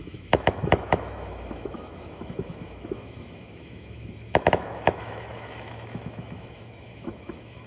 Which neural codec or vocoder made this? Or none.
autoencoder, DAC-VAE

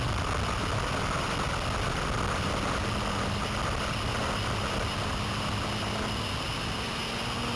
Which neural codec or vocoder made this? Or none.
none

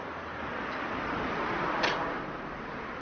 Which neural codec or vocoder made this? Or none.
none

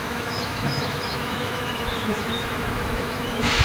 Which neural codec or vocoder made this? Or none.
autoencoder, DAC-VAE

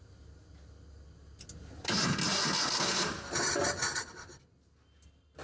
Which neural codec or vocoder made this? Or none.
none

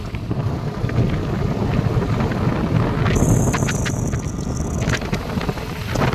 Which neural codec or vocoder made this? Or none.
none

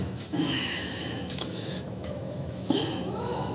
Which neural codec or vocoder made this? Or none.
autoencoder, DAC-VAE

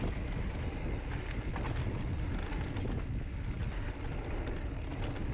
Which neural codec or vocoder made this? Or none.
none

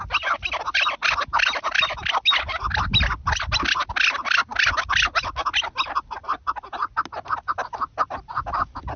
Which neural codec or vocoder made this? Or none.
none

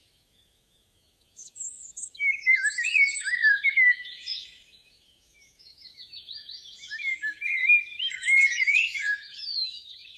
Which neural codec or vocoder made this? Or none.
autoencoder, DAC-VAE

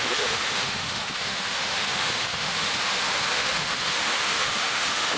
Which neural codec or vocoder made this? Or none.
autoencoder, DAC-VAE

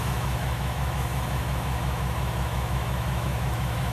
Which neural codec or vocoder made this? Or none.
autoencoder, DAC-VAE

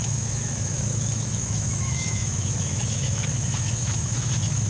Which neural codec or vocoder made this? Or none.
autoencoder, DAC-VAE